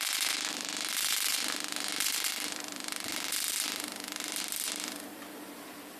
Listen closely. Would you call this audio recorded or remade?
remade